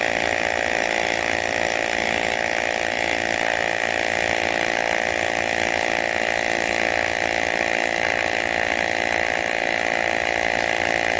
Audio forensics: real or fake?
real